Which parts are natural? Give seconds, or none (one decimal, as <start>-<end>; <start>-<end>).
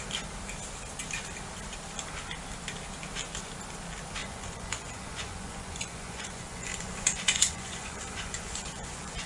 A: 0.0-4.2